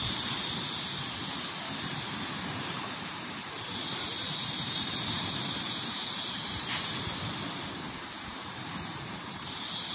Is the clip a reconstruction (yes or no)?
yes